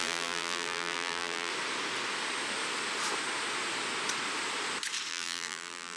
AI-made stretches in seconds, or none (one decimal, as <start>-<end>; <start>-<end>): 0.0-1.5; 5.1-6.0